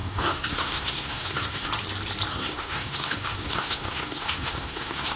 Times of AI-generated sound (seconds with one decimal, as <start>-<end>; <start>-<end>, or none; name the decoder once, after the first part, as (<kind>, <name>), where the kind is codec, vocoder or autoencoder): 0.0-1.7 (codec, SNAC); 2.3-5.2